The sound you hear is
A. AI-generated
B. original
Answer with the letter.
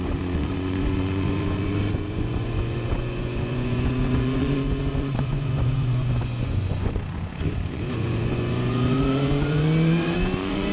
A